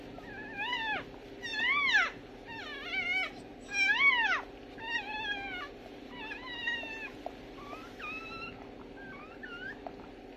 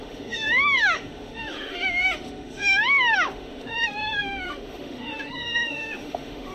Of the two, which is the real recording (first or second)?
first